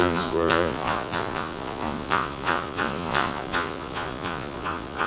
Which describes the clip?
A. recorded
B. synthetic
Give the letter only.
B